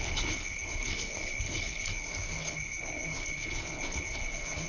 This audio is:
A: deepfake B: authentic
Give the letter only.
A